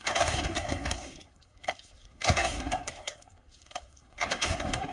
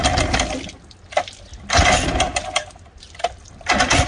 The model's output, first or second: first